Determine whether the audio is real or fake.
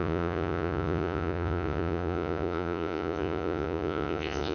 fake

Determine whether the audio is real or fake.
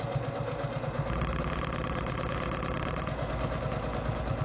real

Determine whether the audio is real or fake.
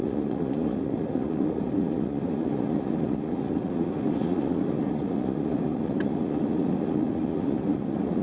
fake